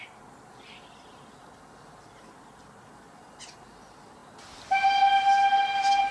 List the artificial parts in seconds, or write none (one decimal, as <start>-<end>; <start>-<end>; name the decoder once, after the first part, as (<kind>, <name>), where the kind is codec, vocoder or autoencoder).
none